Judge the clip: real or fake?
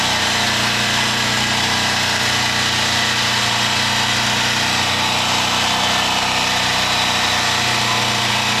real